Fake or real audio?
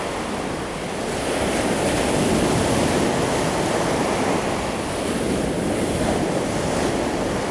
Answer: real